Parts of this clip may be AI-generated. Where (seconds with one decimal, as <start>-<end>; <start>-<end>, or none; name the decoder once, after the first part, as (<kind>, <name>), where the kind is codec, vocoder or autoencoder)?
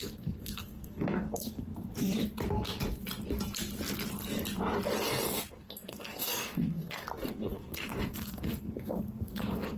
0.0-1.7 (codec, SNAC); 5.5-9.8